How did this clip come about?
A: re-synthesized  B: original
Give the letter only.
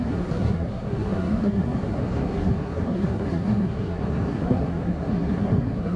A